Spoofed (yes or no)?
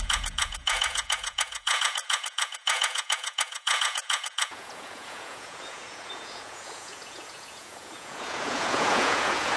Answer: yes